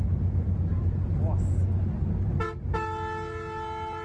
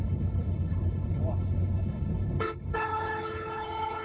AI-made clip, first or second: second